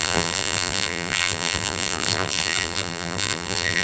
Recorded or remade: remade